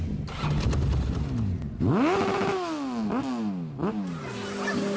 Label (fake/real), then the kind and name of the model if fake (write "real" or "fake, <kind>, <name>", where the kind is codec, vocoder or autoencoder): real